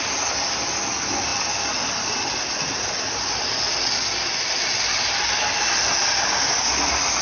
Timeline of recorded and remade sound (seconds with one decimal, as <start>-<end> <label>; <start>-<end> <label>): 0.0-7.2 recorded